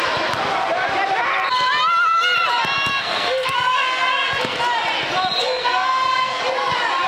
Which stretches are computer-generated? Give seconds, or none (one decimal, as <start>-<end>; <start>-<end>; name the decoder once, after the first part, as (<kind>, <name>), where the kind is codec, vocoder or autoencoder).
2.9-4.6 (codec, SNAC); 5.4-6.4